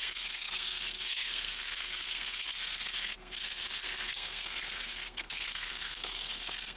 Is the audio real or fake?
fake